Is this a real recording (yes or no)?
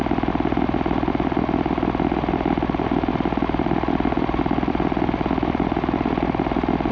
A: yes